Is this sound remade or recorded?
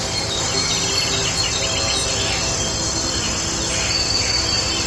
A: recorded